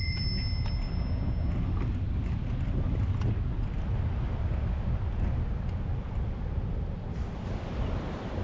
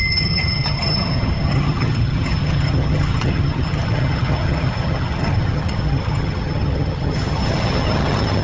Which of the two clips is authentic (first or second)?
first